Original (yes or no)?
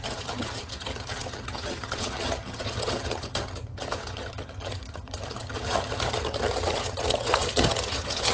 no